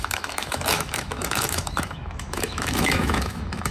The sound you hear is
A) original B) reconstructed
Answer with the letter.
B